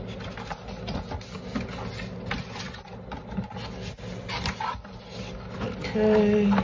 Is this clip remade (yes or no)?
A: no